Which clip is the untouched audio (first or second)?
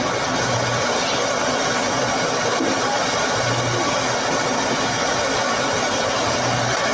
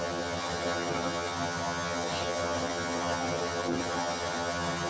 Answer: first